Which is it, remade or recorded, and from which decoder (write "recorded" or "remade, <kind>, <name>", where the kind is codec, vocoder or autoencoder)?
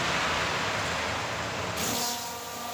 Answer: recorded